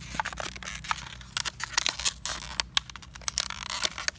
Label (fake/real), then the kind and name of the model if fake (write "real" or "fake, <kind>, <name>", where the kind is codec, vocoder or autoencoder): real